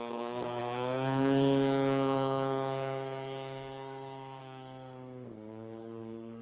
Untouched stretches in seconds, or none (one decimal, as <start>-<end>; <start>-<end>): none